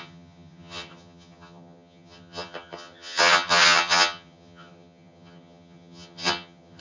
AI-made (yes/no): yes